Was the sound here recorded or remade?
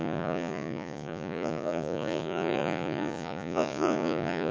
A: remade